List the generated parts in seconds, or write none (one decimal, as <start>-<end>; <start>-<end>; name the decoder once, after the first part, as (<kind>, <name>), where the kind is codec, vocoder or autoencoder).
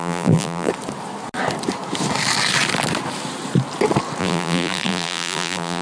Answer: 0.0-0.7 (vocoder, BigVGAN v2); 4.2-5.8